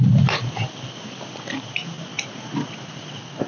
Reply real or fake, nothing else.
real